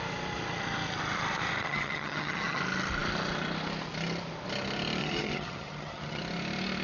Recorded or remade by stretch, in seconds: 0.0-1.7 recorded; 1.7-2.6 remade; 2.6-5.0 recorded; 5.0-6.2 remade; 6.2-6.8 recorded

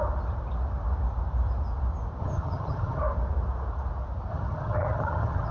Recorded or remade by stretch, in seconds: 0.0-2.2 recorded; 2.2-3.0 remade; 3.0-4.3 recorded; 4.3-5.5 remade

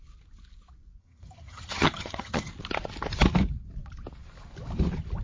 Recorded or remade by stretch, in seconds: 0.0-1.0 recorded; 1.0-2.5 remade; 2.5-5.2 recorded

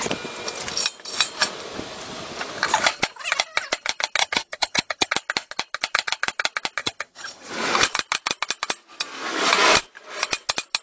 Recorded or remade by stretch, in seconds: 0.0-4.2 recorded; 4.2-5.1 remade; 5.1-6.8 recorded; 6.8-7.5 remade; 7.5-10.8 recorded

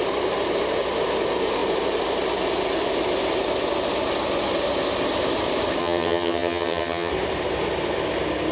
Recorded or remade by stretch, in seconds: 0.0-5.8 recorded; 5.8-7.1 remade; 7.1-8.5 recorded

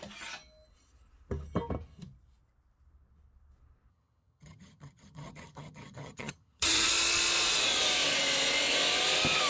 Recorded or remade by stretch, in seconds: 0.0-3.9 recorded; 3.9-6.9 remade; 6.9-9.5 recorded

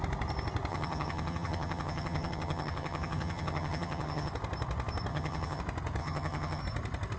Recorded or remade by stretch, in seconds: 0.0-0.7 recorded; 0.7-4.3 remade; 4.3-5.1 recorded; 5.1-5.6 remade; 5.6-6.0 recorded; 6.0-6.6 remade; 6.6-7.2 recorded

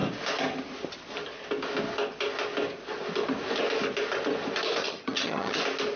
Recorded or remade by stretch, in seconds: 0.0-4.8 recorded; 4.8-5.6 remade; 5.6-6.0 recorded